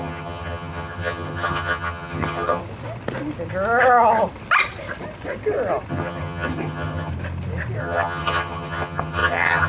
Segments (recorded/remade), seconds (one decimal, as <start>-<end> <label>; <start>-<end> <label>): 0.0-2.6 remade; 2.6-5.9 recorded; 5.9-7.1 remade; 7.1-7.8 recorded; 7.8-9.7 remade